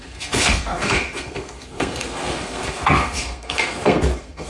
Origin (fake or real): fake